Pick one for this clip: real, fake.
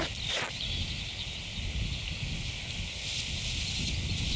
real